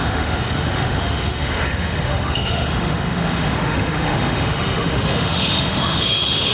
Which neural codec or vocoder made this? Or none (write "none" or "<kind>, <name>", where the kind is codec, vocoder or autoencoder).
autoencoder, DAC-VAE